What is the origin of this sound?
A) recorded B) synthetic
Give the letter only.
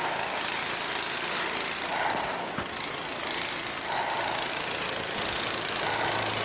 A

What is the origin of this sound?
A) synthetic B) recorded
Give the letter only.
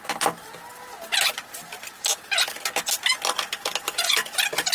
B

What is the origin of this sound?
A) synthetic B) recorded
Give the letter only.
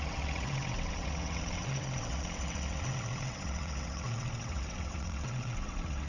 A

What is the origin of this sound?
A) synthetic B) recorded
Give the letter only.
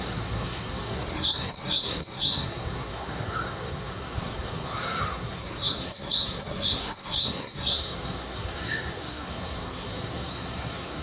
A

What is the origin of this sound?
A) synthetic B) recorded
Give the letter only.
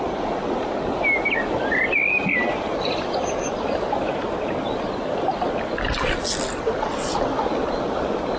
B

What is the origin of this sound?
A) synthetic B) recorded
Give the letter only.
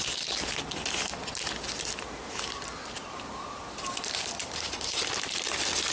B